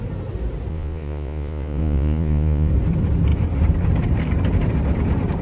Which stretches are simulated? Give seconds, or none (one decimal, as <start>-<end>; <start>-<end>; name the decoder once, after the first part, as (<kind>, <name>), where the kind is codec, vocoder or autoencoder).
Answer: 0.7-2.7 (vocoder, Vocos)